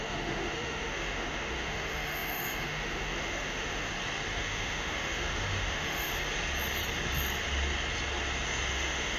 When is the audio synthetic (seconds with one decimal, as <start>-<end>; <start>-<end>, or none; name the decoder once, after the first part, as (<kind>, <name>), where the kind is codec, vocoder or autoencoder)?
0.0-3.9 (autoencoder, DAC-VAE); 4.4-6.1; 8.7-9.2